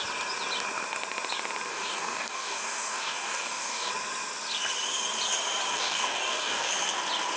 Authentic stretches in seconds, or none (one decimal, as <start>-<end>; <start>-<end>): 0.0-1.7; 3.9-5.7; 6.7-7.4